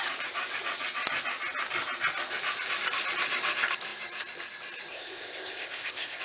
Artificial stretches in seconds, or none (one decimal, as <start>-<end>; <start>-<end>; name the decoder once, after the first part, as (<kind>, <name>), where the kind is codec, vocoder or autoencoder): 4.9-6.2 (codec, ZipCodec)